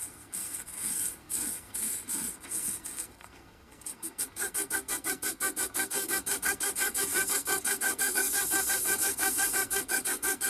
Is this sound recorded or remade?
remade